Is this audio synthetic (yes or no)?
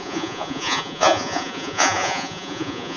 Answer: yes